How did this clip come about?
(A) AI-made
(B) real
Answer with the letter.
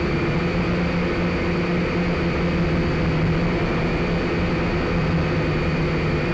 B